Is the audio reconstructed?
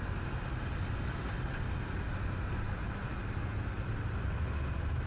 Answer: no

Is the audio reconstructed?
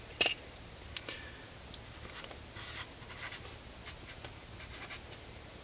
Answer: no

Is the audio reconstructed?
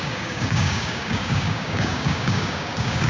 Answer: yes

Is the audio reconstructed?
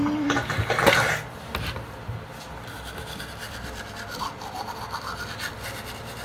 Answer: no